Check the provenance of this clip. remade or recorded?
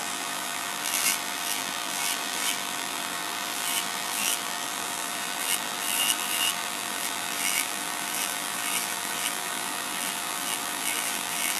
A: remade